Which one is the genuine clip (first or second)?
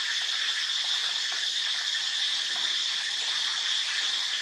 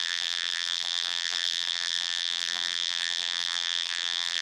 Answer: first